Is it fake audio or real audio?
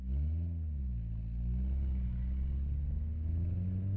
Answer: real